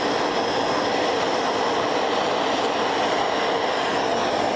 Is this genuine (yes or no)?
yes